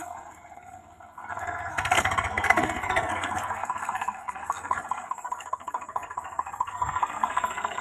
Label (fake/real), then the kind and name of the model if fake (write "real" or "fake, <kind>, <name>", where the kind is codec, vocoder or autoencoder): fake, codec, SNAC